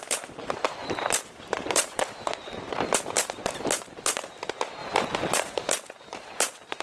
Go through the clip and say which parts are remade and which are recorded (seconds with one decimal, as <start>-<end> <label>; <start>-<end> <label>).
0.0-6.8 remade